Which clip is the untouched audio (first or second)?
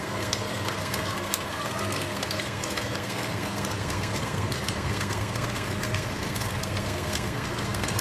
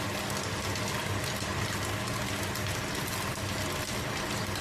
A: second